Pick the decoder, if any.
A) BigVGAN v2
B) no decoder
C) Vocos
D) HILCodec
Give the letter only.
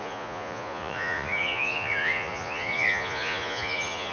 C